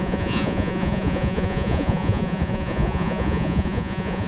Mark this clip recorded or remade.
remade